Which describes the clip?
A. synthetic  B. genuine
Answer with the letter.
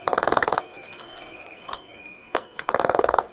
A